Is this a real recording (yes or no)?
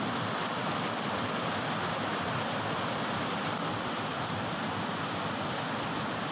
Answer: yes